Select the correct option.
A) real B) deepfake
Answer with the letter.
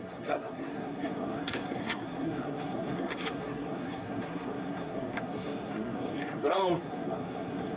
B